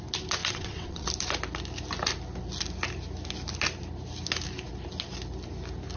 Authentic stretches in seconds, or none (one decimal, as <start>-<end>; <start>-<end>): 0.0-0.4; 1.1-6.0

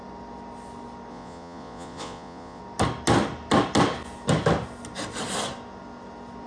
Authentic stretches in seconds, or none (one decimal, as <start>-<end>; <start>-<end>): 0.0-1.1; 2.6-6.5

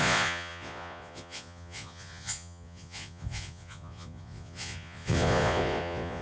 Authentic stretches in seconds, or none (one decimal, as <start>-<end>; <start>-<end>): none

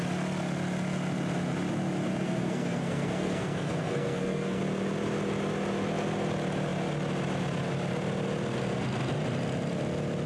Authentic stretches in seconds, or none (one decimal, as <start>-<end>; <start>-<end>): 0.0-2.1; 4.6-10.3

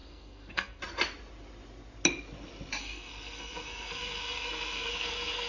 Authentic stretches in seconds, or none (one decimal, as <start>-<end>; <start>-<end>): 0.8-2.8

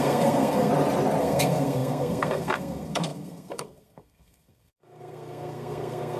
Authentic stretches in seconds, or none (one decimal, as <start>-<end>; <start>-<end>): 0.7-1.2

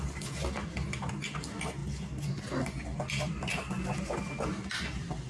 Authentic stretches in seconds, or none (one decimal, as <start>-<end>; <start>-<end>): 0.0-5.3